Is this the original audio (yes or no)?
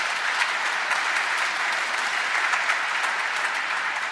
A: yes